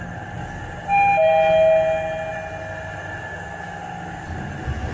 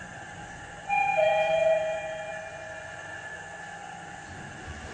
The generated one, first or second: second